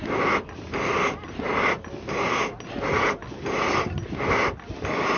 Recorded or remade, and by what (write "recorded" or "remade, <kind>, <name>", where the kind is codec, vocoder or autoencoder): recorded